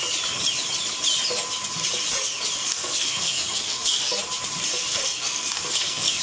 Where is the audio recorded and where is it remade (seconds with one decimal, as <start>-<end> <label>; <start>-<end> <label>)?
0.0-2.6 recorded; 2.6-4.2 remade; 4.2-4.8 recorded; 4.8-6.2 remade